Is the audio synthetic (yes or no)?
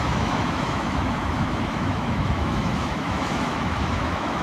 yes